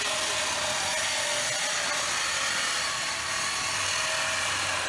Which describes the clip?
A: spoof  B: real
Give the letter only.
B